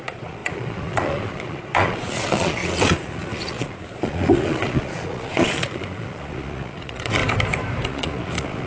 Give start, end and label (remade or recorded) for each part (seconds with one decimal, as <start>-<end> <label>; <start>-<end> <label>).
0.0-7.2 remade; 7.2-7.9 recorded; 7.9-8.7 remade